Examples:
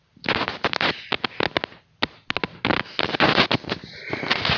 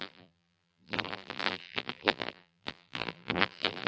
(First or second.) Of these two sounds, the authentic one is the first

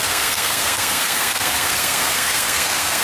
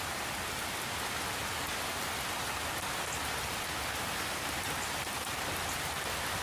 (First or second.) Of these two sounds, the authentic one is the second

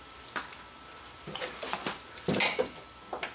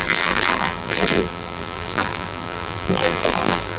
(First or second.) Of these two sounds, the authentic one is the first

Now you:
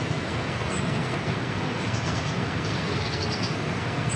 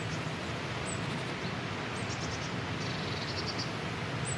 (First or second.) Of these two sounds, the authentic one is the second